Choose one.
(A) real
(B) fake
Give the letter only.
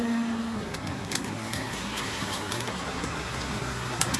B